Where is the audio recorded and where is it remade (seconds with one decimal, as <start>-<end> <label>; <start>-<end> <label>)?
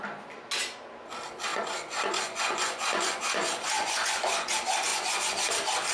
0.0-1.5 recorded; 1.5-4.5 remade; 4.5-4.9 recorded; 4.9-5.5 remade; 5.5-5.9 recorded